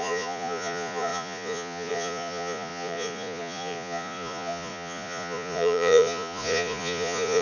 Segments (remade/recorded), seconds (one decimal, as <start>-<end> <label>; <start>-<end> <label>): 0.0-7.4 remade